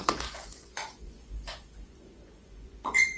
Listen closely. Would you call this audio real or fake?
fake